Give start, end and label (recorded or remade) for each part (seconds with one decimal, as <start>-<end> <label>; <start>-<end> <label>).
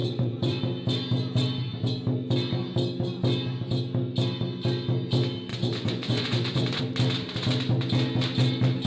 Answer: 0.0-0.6 remade; 0.6-5.5 recorded; 5.5-6.8 remade; 6.8-8.9 recorded